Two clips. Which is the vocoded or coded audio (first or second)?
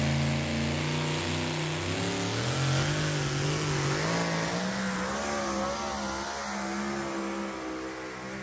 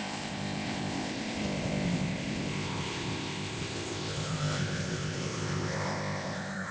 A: second